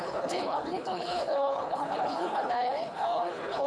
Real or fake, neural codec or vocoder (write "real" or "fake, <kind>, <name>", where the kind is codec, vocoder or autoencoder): fake, codec, HILCodec